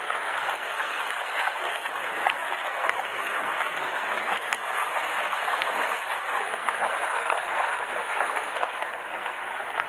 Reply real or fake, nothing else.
fake